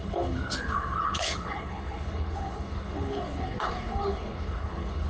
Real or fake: fake